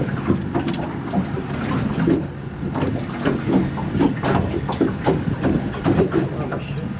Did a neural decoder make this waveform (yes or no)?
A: no